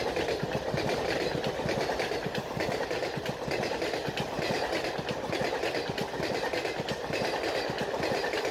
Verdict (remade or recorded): recorded